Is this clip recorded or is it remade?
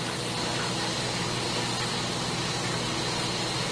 recorded